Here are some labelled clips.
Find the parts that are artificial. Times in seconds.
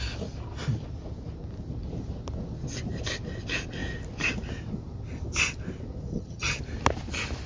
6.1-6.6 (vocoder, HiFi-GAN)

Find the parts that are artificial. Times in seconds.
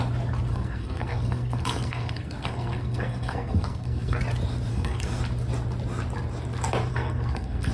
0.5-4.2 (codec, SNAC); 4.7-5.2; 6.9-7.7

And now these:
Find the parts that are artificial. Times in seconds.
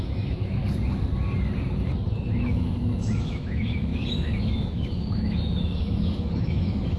0.0-0.6 (autoencoder, DAC-VAE); 2.4-3.9; 4.4-7.0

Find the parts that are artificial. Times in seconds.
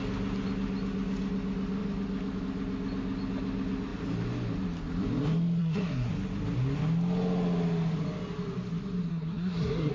5.6-6.1 (codec, SNAC); 9.1-9.9